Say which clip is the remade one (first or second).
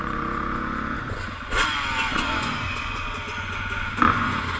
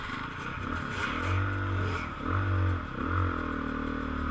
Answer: first